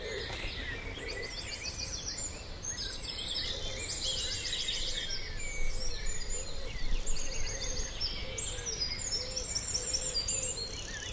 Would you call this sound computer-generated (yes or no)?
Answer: no